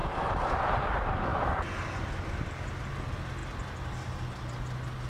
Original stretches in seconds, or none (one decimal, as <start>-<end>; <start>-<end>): 0.0-5.1